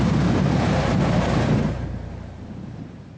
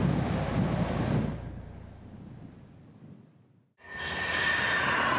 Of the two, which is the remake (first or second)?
first